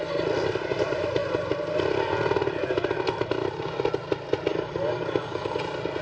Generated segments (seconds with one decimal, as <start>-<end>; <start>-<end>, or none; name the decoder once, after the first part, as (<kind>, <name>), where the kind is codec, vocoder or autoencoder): 4.5-5.6 (codec, DAC)